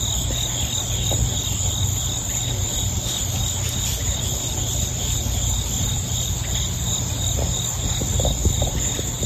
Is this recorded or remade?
recorded